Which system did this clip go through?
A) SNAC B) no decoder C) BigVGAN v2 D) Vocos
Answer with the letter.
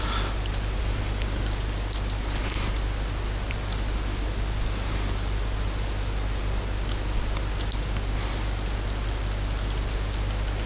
B